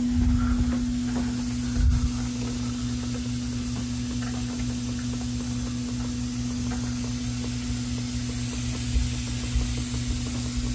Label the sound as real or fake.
real